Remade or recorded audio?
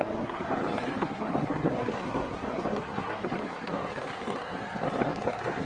remade